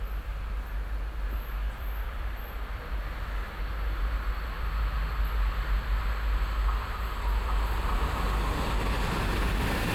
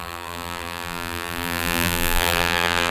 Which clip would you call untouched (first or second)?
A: first